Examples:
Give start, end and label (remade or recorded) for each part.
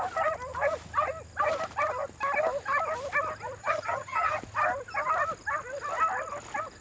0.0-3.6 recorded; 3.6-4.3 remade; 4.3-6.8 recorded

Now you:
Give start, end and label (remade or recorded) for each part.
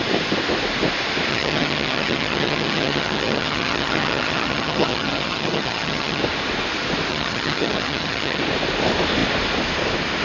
0.0-1.3 recorded; 1.3-6.2 remade; 6.2-7.1 recorded; 7.1-8.4 remade; 8.4-10.2 recorded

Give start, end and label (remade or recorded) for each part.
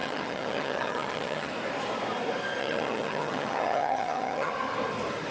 0.0-1.5 remade; 1.5-2.6 recorded; 2.6-4.5 remade; 4.5-5.3 recorded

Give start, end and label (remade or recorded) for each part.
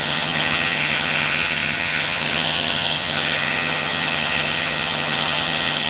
0.0-5.9 remade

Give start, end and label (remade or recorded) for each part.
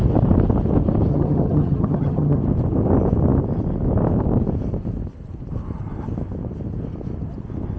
0.0-1.1 recorded; 1.1-2.4 remade; 2.4-7.8 recorded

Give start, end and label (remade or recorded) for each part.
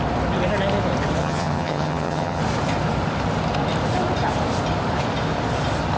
0.0-1.2 recorded; 1.2-2.4 remade; 2.4-6.0 recorded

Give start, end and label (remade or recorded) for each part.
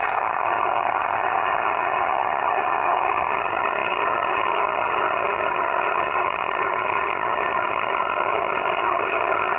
0.0-9.6 remade